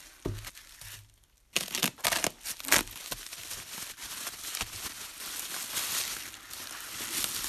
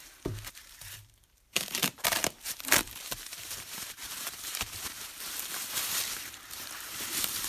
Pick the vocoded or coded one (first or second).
second